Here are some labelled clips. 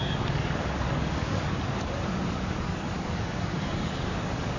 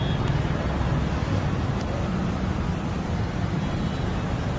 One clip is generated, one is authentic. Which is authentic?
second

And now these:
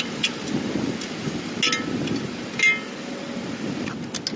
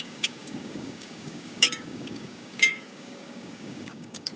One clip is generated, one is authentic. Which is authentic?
first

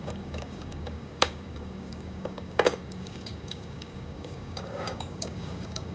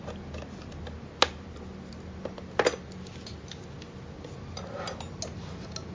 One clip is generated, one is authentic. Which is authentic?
second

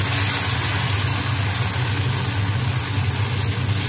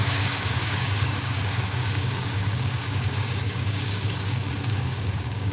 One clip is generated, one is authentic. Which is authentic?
first